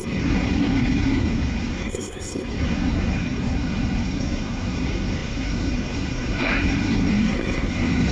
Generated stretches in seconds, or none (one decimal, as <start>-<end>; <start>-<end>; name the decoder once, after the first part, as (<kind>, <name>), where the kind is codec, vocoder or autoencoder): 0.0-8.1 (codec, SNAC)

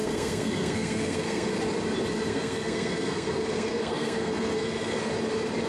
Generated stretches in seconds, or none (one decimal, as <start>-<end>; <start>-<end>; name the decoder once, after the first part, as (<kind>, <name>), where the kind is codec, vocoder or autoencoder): 0.0-1.6 (codec, SNAC); 2.3-5.1

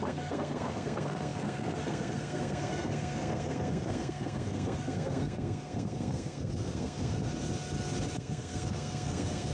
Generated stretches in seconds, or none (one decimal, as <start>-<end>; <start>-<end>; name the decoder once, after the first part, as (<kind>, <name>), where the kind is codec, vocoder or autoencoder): 0.0-7.3 (codec, SNAC); 8.2-9.5

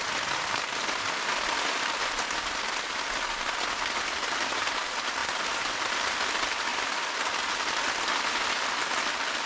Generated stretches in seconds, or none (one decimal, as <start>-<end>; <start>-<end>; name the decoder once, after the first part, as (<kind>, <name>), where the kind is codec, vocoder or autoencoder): none

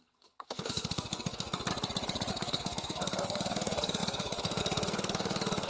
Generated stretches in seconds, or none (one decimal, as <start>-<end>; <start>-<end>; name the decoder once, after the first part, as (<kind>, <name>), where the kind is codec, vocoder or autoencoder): 0.0-1.7 (codec, SNAC); 2.3-5.7

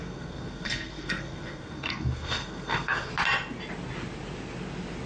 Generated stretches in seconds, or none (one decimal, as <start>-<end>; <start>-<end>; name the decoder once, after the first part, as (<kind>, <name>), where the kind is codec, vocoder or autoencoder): 0.0-3.1 (codec, SNAC)